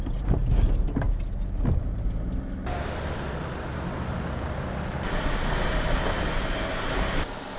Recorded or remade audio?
recorded